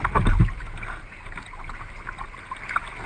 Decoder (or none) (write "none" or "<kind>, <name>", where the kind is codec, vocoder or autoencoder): none